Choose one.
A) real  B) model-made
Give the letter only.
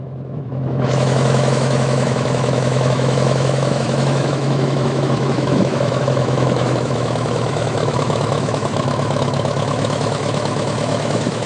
B